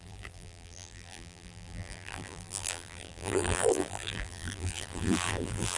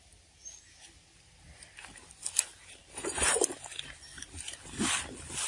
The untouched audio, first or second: second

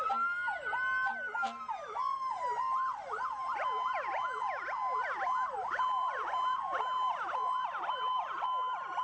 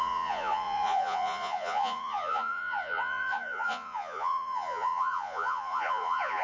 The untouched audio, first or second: first